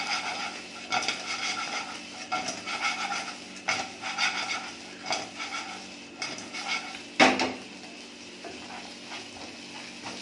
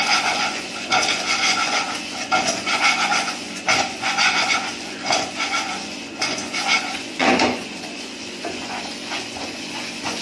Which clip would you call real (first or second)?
first